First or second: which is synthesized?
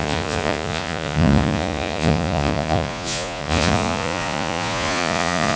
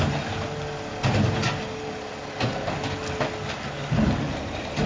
first